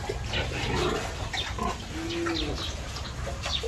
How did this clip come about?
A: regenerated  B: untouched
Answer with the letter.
B